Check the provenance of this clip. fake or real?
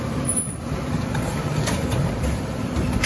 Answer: fake